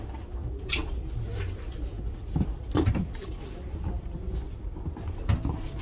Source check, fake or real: real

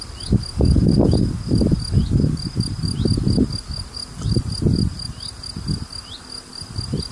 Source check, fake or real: real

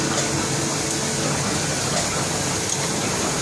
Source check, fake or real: real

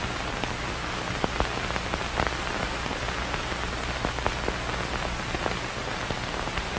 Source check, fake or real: real